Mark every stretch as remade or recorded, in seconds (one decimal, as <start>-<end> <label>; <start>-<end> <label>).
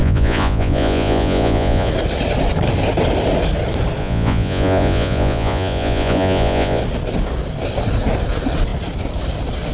0.0-1.9 remade; 1.9-4.0 recorded; 4.0-6.8 remade; 6.8-9.7 recorded